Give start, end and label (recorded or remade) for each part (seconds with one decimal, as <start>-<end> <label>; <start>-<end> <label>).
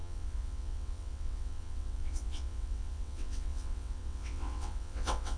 0.0-5.4 remade